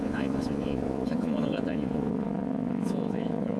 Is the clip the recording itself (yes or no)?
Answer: no